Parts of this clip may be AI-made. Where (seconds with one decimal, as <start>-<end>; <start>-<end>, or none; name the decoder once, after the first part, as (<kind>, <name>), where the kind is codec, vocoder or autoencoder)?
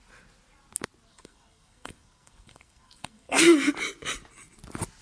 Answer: 1.1-3.7 (codec, SNAC)